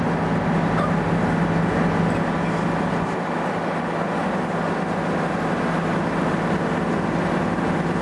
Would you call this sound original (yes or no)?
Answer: yes